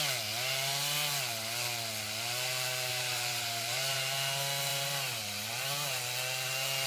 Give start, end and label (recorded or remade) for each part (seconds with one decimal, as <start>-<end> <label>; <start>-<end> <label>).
0.0-2.9 recorded; 2.9-4.0 remade; 4.0-4.7 recorded; 4.7-6.0 remade; 6.0-6.9 recorded